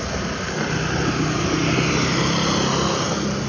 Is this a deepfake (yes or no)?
no